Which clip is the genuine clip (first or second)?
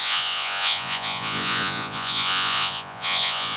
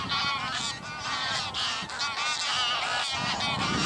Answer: second